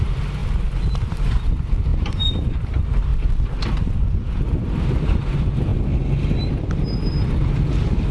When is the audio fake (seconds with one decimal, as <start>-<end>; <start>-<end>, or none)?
0.0-0.4; 1.3-3.1; 4.8-5.7; 6.7-8.1